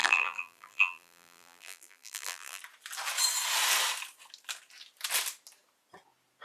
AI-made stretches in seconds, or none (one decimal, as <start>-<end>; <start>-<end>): 0.0-2.6